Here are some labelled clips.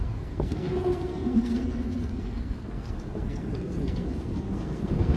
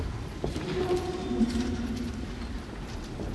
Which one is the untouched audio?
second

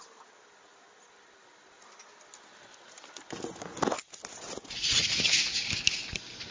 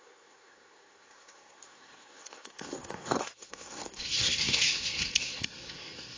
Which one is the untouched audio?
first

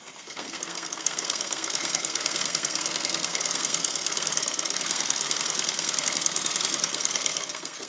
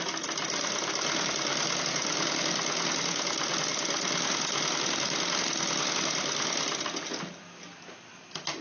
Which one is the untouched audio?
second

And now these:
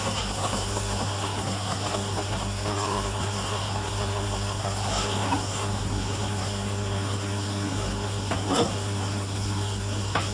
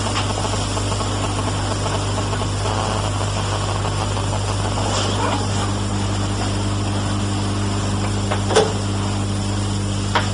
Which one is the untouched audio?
second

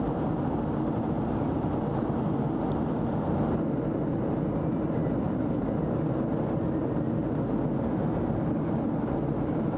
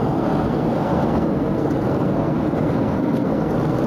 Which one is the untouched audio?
first